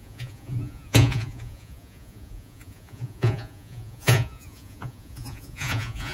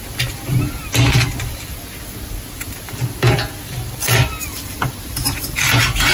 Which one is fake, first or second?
first